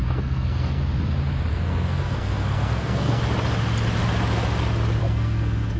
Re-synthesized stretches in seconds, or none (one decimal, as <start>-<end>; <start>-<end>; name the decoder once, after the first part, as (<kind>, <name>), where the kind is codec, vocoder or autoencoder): 0.0-0.8 (codec, SNAC); 1.5-3.2; 5.0-5.8